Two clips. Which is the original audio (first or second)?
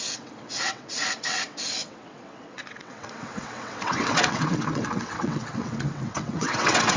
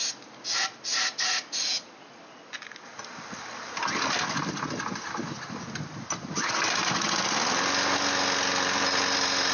second